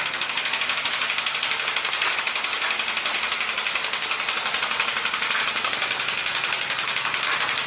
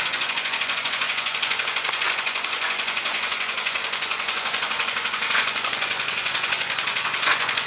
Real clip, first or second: first